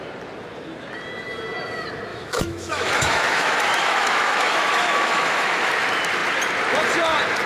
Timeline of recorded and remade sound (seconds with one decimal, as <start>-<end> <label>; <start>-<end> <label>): 0.0-2.1 recorded; 2.1-5.7 remade; 5.7-7.5 recorded

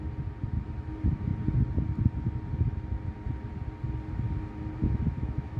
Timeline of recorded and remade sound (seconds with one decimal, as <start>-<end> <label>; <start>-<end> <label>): 0.0-4.8 recorded; 4.8-5.6 remade

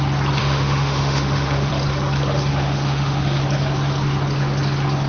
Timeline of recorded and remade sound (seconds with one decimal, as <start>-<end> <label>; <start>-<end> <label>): 0.0-0.4 recorded; 0.4-1.7 remade; 1.7-2.5 recorded; 2.5-3.4 remade; 3.4-5.1 recorded

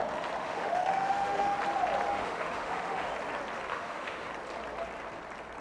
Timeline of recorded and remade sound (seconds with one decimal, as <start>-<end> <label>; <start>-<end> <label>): 0.0-0.4 recorded; 0.4-1.6 remade; 1.6-2.1 recorded; 2.1-3.1 remade; 3.1-3.7 recorded; 3.7-4.3 remade; 4.3-5.6 recorded

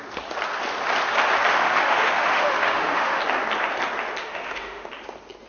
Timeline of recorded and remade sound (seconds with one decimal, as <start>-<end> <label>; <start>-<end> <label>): 0.0-1.5 recorded; 1.5-3.2 remade; 3.2-4.2 recorded; 4.2-4.9 remade; 4.9-5.5 recorded

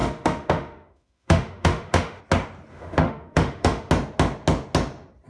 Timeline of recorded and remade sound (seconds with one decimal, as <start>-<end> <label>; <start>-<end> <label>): 0.0-2.2 remade; 2.2-2.7 recorded; 2.7-3.9 remade; 3.9-5.3 recorded

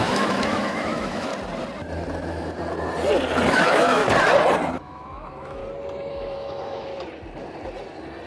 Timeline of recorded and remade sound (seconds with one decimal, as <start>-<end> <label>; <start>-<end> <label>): 0.0-1.3 remade; 1.3-3.5 recorded; 3.5-4.0 remade; 4.0-4.8 recorded; 4.8-5.6 remade; 5.6-6.1 recorded; 6.1-6.9 remade; 6.9-8.3 recorded

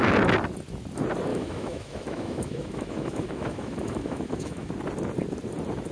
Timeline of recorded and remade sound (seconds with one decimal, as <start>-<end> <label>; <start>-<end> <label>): 0.0-1.3 recorded; 1.3-4.7 remade; 4.7-5.9 recorded